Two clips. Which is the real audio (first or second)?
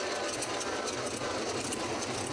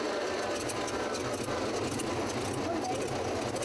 second